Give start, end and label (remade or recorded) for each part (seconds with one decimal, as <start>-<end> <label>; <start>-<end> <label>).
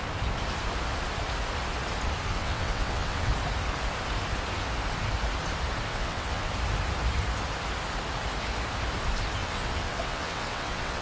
0.0-2.3 recorded; 2.3-3.3 remade; 3.3-5.9 recorded; 5.9-6.5 remade; 6.5-9.4 recorded; 9.4-11.0 remade